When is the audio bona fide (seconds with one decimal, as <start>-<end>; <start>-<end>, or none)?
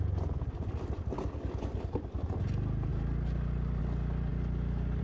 0.0-5.0